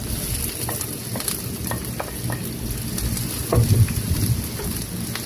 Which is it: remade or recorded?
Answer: recorded